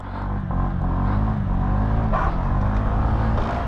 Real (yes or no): yes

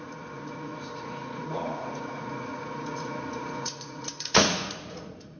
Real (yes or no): no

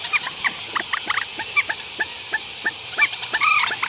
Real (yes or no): yes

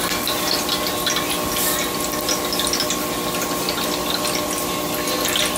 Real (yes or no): yes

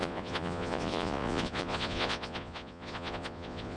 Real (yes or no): no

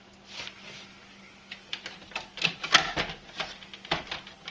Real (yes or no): yes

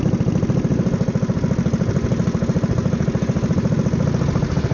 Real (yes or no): yes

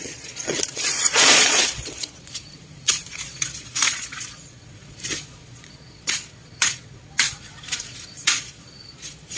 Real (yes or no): no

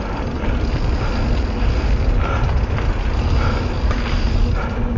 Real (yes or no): yes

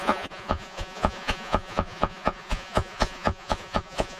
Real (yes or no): no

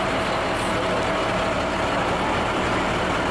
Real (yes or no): yes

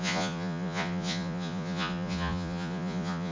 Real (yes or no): no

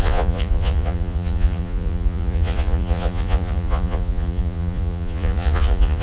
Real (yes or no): no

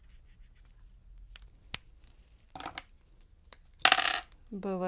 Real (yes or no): yes